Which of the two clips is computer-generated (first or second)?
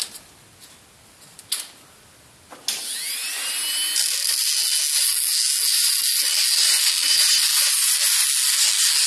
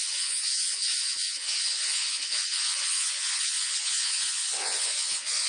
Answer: second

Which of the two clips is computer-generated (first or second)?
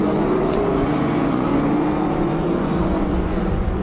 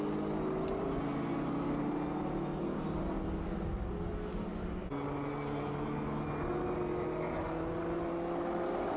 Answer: first